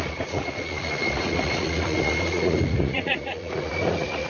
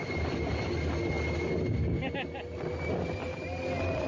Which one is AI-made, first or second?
first